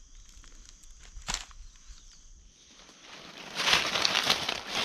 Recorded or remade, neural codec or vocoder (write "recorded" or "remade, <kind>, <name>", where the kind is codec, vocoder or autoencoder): recorded